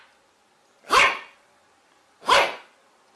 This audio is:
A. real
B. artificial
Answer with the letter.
A